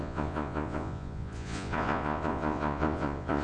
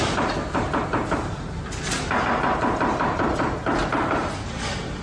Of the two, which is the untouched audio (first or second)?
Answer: second